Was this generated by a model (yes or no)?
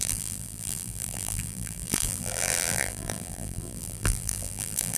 yes